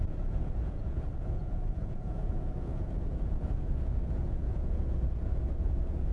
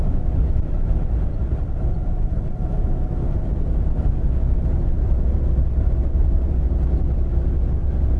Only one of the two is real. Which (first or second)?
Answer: second